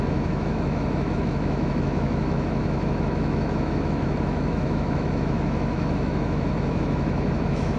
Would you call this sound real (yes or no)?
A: no